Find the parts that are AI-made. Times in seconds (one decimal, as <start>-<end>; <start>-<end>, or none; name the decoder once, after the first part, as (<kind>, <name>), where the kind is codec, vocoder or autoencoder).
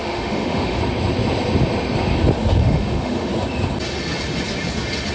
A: 0.0-0.8 (autoencoder, DAC-VAE); 2.6-3.3